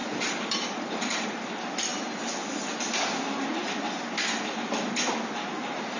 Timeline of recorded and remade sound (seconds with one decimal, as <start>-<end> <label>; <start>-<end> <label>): 0.0-1.5 remade; 1.5-6.0 recorded

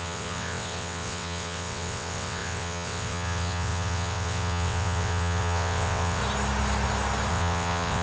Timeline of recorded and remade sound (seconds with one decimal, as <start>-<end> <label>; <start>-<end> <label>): 0.0-6.2 remade; 6.2-7.3 recorded; 7.3-8.0 remade